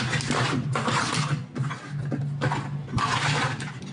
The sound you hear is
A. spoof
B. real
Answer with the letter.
B